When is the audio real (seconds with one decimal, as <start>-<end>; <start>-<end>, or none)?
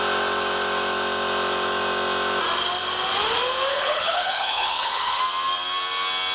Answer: 0.0-3.7; 5.2-6.3